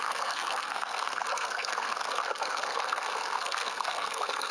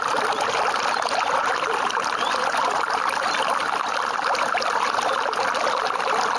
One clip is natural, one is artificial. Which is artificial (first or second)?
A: first